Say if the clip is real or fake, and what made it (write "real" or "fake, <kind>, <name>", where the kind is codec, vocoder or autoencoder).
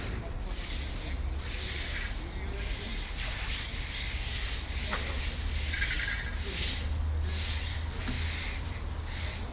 real